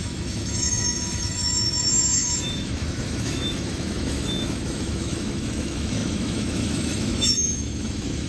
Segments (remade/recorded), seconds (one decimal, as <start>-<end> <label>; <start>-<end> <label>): 0.0-8.3 remade

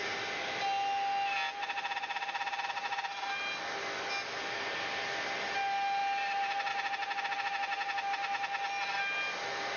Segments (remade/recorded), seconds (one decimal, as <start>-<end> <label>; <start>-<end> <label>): 0.0-9.8 recorded

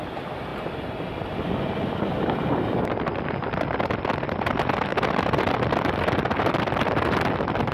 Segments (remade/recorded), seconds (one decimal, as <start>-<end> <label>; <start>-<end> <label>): 0.0-7.7 recorded

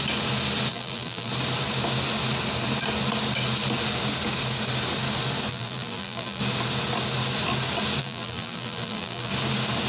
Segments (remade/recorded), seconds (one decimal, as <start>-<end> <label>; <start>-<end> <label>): 0.0-0.7 recorded; 0.7-1.3 remade; 1.3-5.5 recorded; 5.5-6.4 remade; 6.4-8.0 recorded; 8.0-9.3 remade; 9.3-9.9 recorded

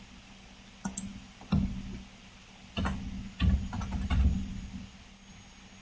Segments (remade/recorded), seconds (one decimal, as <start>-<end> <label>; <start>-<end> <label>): 0.0-5.8 recorded